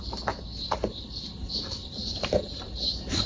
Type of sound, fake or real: fake